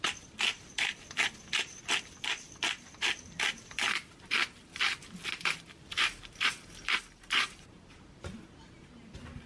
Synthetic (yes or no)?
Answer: yes